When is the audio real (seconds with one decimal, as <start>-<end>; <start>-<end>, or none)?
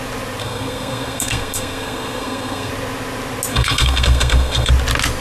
0.0-0.4; 2.7-3.5; 4.7-5.2